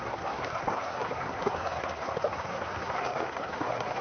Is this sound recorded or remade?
remade